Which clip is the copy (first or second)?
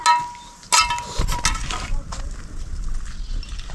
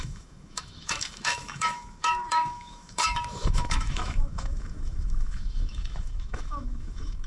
second